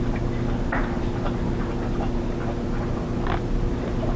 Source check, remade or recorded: recorded